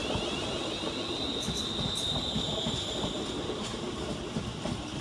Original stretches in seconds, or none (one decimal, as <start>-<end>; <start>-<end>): 0.0-0.6; 3.7-4.4